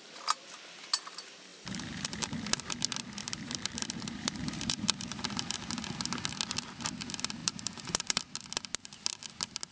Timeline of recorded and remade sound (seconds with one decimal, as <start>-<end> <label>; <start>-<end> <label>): 0.0-1.5 recorded; 1.5-2.6 remade; 2.6-3.2 recorded; 3.2-5.6 remade; 5.6-7.4 recorded; 7.4-8.2 remade; 8.2-9.7 recorded